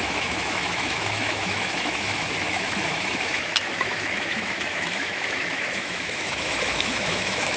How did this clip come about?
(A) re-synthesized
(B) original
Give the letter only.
A